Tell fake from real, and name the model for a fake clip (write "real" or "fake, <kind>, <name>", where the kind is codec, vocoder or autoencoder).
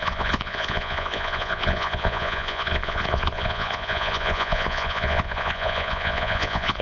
fake, vocoder, Vocos